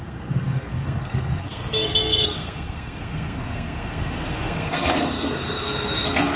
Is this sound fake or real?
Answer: fake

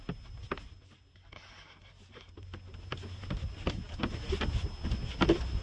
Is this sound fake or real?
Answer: real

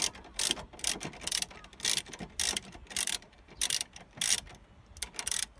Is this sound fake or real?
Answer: real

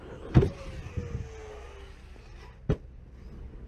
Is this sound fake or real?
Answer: real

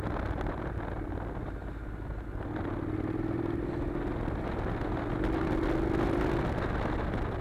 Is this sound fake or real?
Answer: real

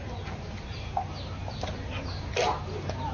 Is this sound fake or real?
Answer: real